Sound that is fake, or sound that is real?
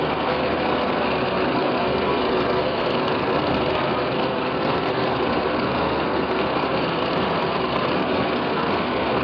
fake